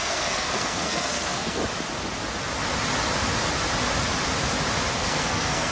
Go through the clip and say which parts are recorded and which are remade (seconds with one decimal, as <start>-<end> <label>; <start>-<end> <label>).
0.0-1.6 remade; 1.6-4.9 recorded; 4.9-5.7 remade